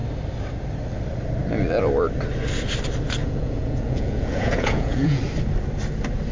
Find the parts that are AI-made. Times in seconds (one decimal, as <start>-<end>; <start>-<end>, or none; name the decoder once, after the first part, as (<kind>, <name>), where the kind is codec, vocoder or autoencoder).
3.2-5.2 (vocoder, Vocos)